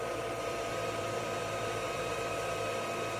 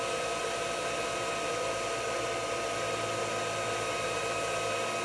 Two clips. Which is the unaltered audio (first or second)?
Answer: second